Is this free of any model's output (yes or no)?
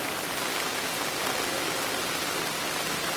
yes